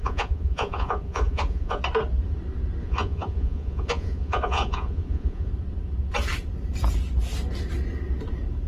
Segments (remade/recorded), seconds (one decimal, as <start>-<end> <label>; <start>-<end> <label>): 0.0-1.8 remade; 1.8-2.8 recorded; 2.8-5.5 remade; 5.5-8.7 recorded